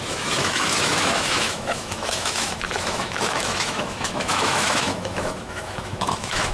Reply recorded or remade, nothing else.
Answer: remade